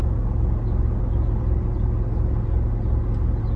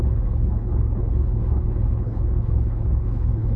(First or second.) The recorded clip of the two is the first